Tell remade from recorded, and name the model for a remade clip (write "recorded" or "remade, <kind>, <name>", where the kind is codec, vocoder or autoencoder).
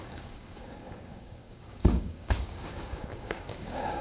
remade, codec, DAC